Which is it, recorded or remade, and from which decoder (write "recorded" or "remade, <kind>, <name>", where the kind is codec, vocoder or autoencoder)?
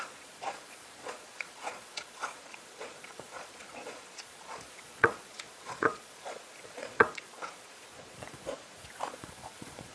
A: remade, vocoder, Vocos